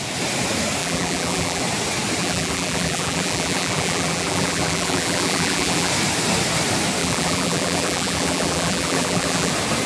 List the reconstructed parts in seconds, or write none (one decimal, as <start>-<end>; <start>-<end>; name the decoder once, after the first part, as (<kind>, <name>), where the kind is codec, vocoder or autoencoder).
0.8-1.6 (vocoder, BigVGAN v2); 2.2-5.9; 7.0-9.5